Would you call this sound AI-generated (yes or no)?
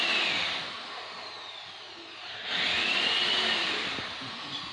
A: no